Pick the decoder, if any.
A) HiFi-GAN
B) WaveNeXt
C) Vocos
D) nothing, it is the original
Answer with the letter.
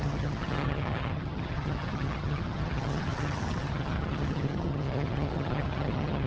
A